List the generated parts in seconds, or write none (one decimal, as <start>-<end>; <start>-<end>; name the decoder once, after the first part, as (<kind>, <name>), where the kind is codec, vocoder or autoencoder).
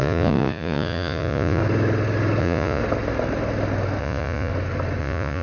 0.0-1.6 (vocoder, Vocos); 2.4-2.8; 4.0-4.5; 5.0-5.4